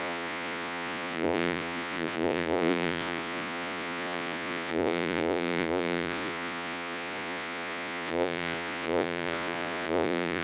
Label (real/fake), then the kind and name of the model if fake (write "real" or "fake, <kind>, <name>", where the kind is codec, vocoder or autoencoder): fake, vocoder, Vocos